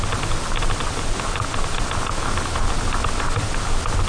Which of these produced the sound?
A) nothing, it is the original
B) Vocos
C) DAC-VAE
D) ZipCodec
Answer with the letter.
A